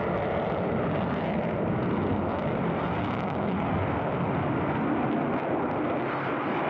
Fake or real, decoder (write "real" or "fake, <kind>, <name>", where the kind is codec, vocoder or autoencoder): real